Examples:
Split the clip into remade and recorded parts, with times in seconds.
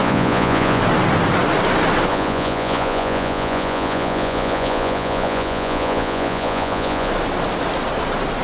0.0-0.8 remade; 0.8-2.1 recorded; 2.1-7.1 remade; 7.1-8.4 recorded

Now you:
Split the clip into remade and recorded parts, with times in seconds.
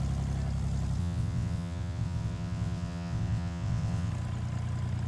0.0-1.0 recorded; 1.0-4.1 remade; 4.1-5.1 recorded